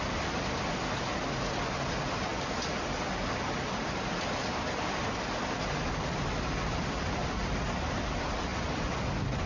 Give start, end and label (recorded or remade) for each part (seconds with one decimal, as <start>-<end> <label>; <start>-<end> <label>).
0.0-8.5 recorded; 8.5-9.5 remade